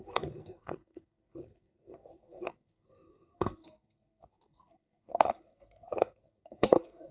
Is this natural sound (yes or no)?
no